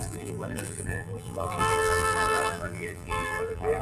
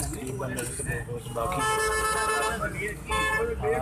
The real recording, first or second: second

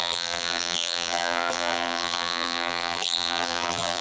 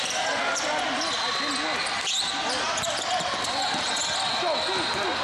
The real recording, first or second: second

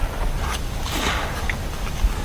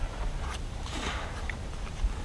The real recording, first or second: first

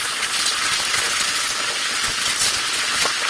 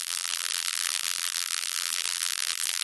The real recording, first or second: first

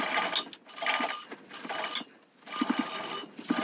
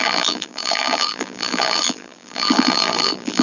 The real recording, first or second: first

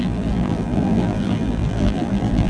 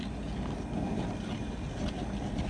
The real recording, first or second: second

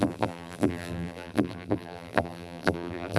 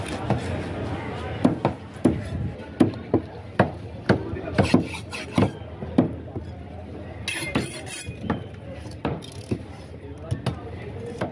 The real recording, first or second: second